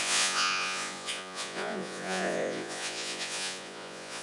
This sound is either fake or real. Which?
fake